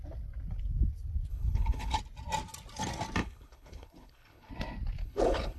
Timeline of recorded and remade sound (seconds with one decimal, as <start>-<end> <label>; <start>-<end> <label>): 0.0-1.3 recorded; 1.3-2.0 remade; 2.0-3.2 recorded; 3.2-4.5 remade; 4.5-5.0 recorded; 5.0-5.6 remade